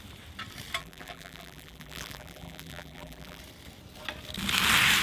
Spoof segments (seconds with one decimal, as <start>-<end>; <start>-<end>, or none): 0.8-3.4